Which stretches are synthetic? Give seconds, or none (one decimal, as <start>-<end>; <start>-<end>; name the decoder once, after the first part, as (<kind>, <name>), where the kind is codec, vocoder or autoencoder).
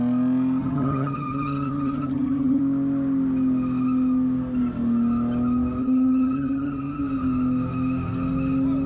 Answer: 0.6-2.6 (vocoder, HiFi-GAN); 5.8-7.0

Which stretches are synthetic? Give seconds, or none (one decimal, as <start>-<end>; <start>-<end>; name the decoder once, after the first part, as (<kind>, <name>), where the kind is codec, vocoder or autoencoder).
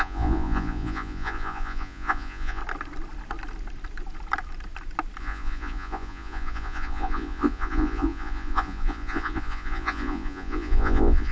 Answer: 0.0-2.6 (vocoder, Vocos); 5.2-11.3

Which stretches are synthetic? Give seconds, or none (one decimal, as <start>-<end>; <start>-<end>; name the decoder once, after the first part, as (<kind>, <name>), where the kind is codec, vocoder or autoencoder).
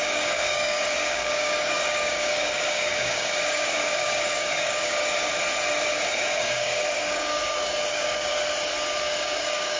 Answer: 0.0-5.0 (codec, DAC); 5.9-8.3; 9.0-9.8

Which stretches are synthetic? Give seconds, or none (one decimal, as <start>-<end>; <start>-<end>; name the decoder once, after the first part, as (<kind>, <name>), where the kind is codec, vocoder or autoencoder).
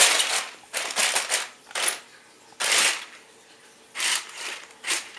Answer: none